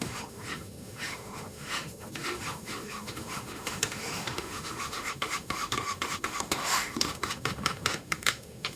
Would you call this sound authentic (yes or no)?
no